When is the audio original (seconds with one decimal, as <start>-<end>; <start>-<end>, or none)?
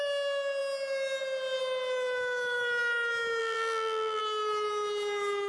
0.0-3.4; 4.2-5.5